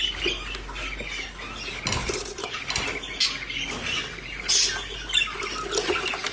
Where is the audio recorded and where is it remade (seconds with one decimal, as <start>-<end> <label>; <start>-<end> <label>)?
0.0-2.0 recorded; 2.0-2.6 remade; 2.6-6.3 recorded